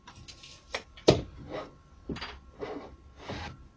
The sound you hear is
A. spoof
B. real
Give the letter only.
B